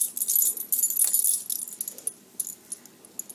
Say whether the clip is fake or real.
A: real